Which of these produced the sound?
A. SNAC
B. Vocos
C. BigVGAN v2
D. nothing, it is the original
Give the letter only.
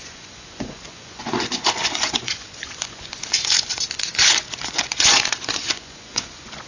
B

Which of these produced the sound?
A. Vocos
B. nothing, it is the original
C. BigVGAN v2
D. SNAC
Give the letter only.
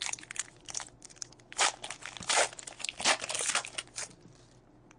B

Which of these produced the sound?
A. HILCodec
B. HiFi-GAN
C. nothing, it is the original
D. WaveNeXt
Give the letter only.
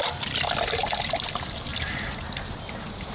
C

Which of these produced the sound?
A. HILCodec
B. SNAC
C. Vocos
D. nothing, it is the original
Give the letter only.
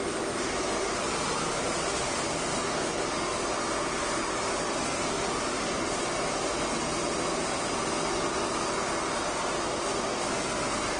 D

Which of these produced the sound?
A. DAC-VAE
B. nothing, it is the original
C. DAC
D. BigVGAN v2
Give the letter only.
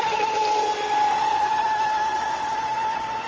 B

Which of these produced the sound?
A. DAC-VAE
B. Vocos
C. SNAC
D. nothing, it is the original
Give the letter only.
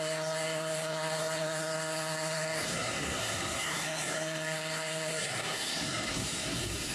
C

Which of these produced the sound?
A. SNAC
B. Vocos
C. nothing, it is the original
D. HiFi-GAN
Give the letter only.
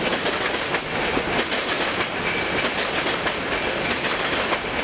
C